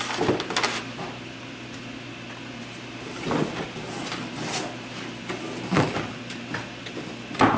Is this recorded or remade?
recorded